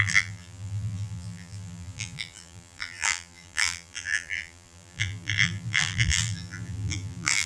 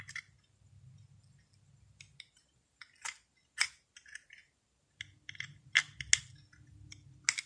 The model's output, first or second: first